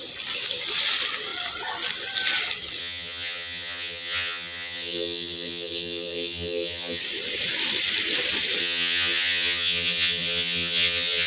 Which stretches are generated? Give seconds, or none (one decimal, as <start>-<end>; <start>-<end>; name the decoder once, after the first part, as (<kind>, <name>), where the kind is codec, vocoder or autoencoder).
2.8-7.0 (vocoder, HiFi-GAN); 8.6-11.3